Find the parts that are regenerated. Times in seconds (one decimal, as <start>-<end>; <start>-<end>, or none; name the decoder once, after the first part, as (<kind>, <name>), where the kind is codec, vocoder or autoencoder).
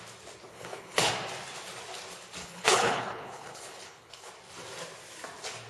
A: 0.5-1.1 (codec, HILCodec); 2.4-4.3